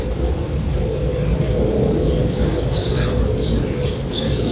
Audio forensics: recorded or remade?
remade